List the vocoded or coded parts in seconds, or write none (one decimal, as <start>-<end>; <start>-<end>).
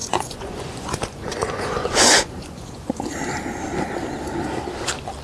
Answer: 0.0-3.1